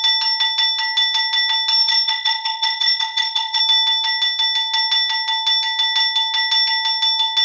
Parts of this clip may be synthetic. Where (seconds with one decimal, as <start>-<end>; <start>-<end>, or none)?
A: 1.8-3.6